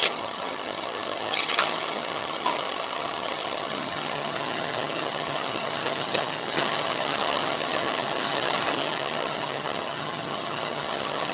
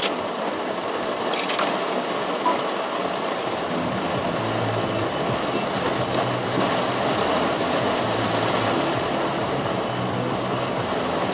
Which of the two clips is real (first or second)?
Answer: second